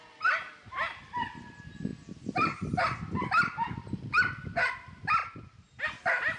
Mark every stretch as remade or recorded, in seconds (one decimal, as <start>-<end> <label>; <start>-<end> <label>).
0.0-6.4 recorded